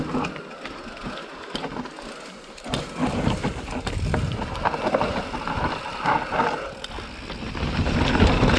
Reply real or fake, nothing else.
real